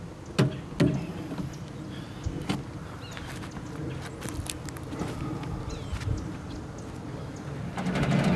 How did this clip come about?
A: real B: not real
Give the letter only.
A